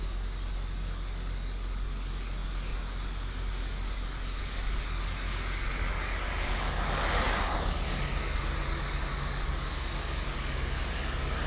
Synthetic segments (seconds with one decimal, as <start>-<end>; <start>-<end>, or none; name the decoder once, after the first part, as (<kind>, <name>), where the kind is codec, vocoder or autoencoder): 0.0-11.5 (codec, DAC)